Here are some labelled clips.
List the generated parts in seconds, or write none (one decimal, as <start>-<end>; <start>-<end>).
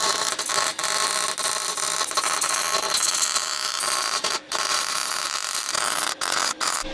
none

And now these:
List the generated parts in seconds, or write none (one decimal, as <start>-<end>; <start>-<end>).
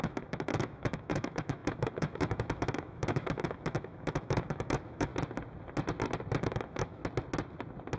0.0-5.1; 6.4-7.0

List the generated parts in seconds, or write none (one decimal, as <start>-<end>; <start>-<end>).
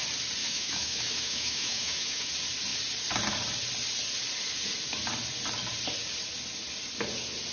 0.4-2.3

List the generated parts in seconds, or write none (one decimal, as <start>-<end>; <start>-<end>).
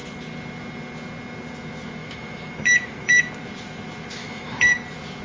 2.0-3.3; 4.2-4.8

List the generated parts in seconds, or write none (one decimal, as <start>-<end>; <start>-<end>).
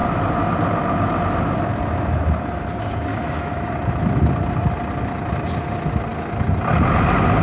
3.1-3.7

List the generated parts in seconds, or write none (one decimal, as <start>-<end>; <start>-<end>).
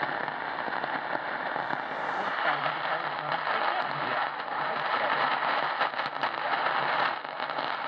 none